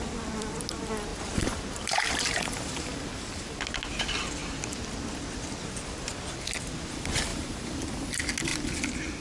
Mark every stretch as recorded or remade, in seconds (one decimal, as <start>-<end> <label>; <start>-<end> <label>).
0.0-1.1 recorded; 1.1-3.6 remade; 3.6-7.3 recorded; 7.3-7.8 remade; 7.8-9.2 recorded